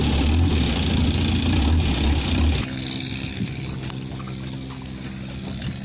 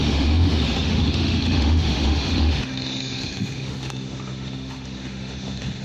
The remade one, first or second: second